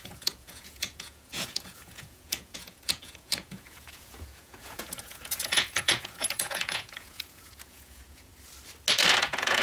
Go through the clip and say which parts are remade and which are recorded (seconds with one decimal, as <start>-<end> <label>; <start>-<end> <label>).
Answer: 0.0-8.3 remade; 8.3-9.2 recorded; 9.2-9.6 remade